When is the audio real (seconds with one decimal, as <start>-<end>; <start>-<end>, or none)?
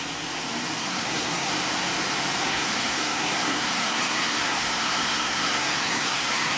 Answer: 0.0-0.8; 1.5-2.4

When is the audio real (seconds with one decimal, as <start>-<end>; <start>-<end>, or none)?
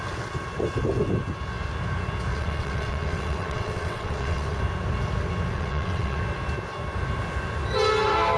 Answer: 0.0-2.3; 4.6-5.5; 6.2-8.4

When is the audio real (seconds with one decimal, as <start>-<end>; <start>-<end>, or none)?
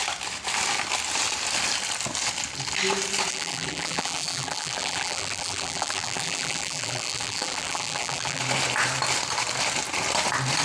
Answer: 0.0-3.3; 8.4-10.6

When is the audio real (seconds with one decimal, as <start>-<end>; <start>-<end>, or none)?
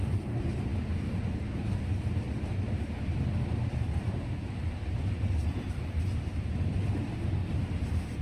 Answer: 0.0-3.7; 6.7-7.4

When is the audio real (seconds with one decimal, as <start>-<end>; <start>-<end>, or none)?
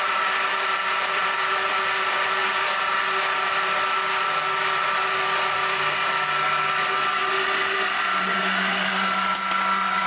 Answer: 0.0-10.1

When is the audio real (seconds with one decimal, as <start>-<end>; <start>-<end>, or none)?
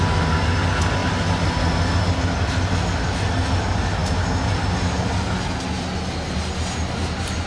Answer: 0.0-7.5